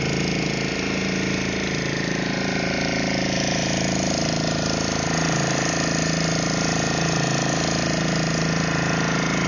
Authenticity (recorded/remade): recorded